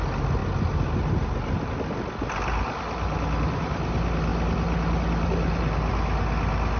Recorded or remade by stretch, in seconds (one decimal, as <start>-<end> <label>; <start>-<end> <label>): 0.0-6.8 recorded